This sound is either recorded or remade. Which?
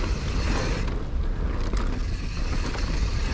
recorded